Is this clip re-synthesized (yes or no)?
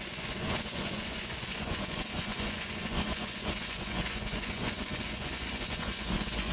yes